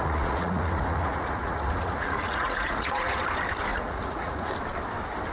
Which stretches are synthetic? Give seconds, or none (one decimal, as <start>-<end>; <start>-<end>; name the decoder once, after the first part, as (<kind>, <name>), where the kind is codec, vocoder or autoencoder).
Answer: 0.0-3.2 (vocoder, Vocos); 3.7-4.5